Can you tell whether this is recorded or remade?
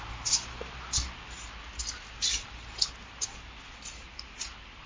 recorded